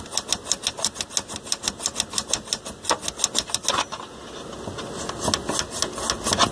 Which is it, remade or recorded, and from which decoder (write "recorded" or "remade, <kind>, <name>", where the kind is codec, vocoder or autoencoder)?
recorded